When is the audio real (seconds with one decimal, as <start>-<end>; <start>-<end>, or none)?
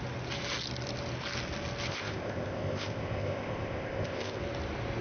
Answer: 0.0-1.9; 4.4-5.0